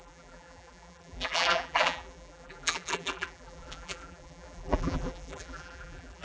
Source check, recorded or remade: remade